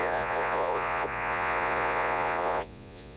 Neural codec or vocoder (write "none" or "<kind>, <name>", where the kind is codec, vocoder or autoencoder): vocoder, Vocos